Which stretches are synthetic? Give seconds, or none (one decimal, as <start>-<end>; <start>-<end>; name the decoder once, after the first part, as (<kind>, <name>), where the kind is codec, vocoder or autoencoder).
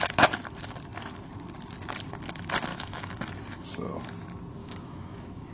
2.7-3.2 (autoencoder, DAC-VAE); 4.6-5.5